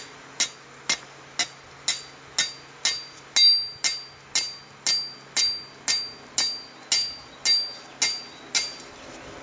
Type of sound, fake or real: real